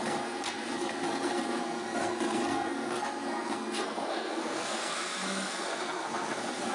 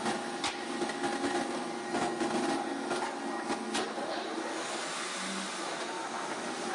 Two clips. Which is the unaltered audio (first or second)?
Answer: second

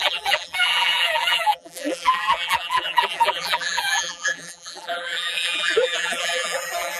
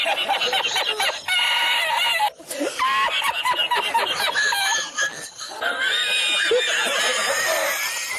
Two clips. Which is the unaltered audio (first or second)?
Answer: second